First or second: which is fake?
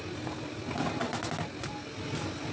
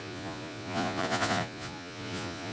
second